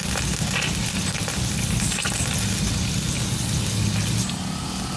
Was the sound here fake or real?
real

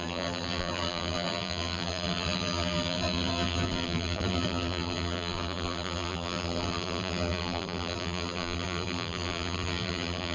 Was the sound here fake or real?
fake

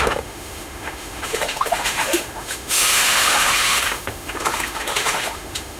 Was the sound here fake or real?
fake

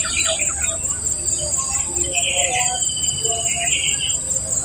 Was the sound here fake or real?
real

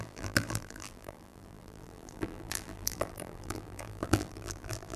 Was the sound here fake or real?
fake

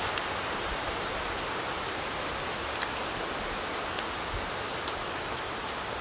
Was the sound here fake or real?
real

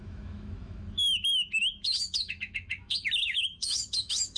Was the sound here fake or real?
fake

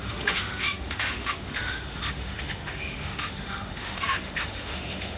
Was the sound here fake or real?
fake